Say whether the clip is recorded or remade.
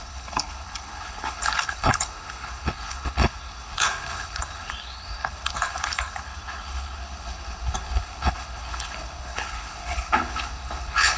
remade